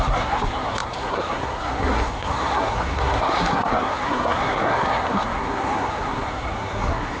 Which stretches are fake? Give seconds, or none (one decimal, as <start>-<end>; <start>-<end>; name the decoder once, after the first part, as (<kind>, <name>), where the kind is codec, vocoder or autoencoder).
0.0-7.2 (codec, SNAC)